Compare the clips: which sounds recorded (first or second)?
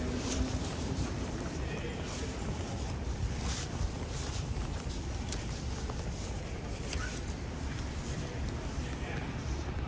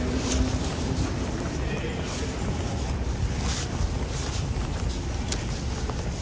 second